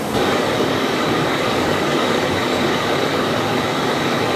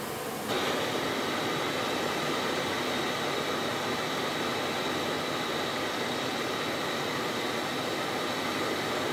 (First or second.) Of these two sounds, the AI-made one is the first